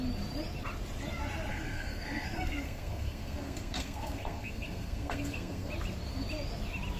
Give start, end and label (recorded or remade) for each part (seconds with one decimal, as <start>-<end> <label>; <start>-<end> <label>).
0.0-1.5 recorded; 1.5-5.7 remade; 5.7-7.0 recorded